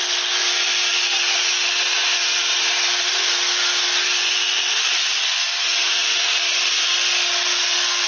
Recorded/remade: recorded